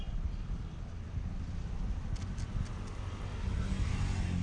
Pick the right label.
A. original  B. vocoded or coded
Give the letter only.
A